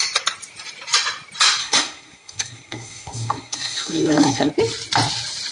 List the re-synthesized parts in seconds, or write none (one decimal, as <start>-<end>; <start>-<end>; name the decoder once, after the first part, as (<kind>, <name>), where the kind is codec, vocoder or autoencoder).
1.6-4.5 (codec, SNAC)